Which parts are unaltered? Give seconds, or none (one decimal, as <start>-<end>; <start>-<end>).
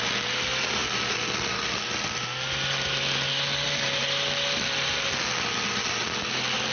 0.0-6.7